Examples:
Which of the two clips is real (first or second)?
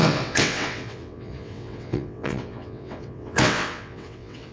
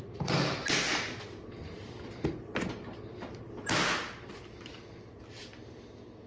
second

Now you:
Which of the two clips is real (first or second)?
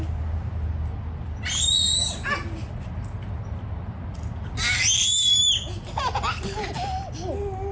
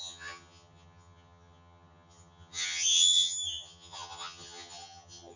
first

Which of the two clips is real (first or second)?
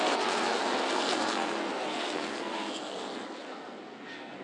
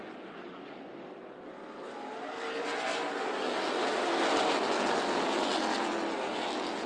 second